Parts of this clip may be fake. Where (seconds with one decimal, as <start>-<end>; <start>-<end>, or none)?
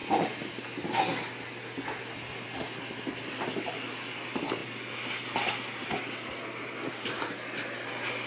none